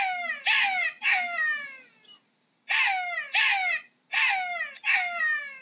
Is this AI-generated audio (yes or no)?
no